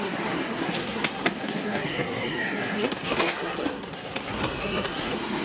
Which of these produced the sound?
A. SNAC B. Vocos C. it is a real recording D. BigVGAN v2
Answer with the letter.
A